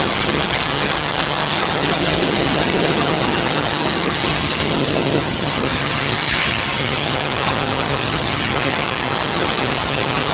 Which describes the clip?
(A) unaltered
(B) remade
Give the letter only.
B